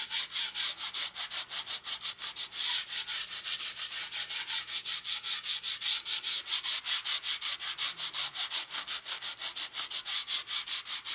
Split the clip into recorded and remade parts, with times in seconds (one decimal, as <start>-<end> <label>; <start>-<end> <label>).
0.0-8.6 recorded; 8.6-9.3 remade; 9.3-11.1 recorded